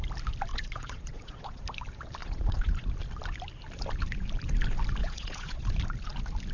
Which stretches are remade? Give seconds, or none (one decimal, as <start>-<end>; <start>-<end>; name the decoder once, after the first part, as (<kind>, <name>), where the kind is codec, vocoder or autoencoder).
0.5-1.6 (vocoder, Vocos); 2.2-2.9; 5.0-5.7